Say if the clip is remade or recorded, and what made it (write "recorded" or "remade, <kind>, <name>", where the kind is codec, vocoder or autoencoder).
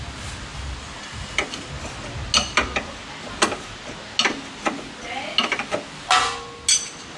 recorded